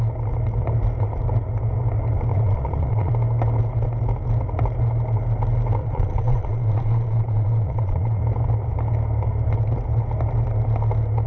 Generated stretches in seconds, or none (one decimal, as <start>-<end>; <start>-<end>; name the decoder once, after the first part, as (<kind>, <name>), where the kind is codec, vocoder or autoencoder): 2.3-3.1 (vocoder, Vocos); 5.8-8.2